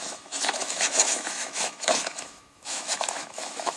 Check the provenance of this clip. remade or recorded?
remade